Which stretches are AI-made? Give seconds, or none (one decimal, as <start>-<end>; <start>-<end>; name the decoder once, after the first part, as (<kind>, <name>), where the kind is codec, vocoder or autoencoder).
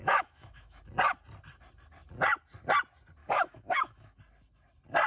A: 0.0-0.8 (autoencoder, DAC-VAE); 3.2-4.2